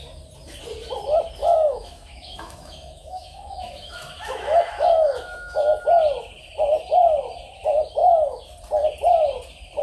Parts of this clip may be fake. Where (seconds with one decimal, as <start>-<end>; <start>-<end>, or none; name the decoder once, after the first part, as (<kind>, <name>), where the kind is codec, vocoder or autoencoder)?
1.4-5.8 (autoencoder, DAC-VAE)